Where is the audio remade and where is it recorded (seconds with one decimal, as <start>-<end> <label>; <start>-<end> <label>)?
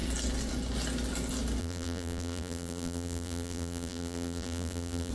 0.0-1.6 recorded; 1.6-5.1 remade